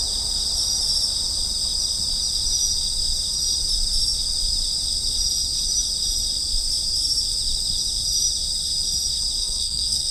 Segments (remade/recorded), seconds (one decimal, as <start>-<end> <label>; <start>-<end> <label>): 0.0-9.4 recorded; 9.4-10.1 remade